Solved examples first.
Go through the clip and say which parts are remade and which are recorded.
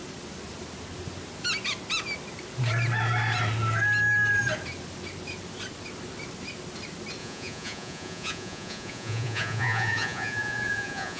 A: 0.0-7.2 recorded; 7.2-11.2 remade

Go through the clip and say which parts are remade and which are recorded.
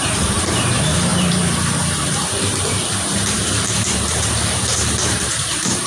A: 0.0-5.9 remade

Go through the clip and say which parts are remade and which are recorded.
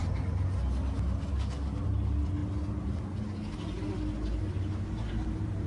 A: 0.0-1.3 recorded; 1.3-1.8 remade; 1.8-5.7 recorded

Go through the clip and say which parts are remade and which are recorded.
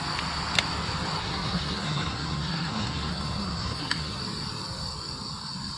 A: 0.0-1.2 recorded; 1.2-4.2 remade; 4.2-5.8 recorded